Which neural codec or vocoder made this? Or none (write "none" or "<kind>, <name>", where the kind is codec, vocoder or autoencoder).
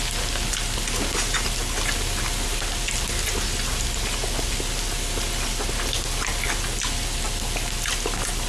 none